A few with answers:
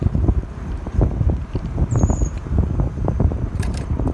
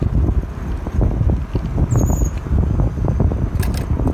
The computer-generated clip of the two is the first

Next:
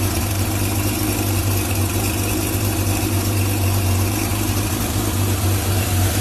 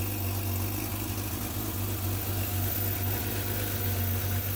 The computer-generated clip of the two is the first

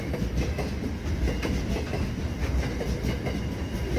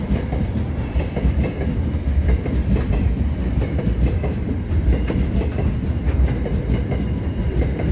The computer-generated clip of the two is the second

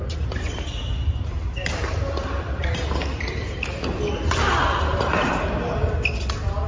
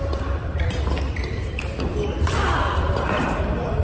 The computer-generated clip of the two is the second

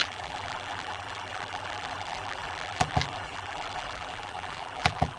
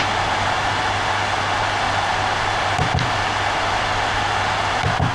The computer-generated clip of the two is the first